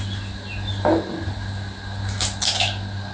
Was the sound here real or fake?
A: real